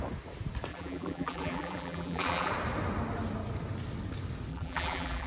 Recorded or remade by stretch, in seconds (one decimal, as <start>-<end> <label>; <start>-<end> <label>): 0.0-0.7 recorded; 0.7-2.5 remade; 2.5-4.5 recorded; 4.5-5.3 remade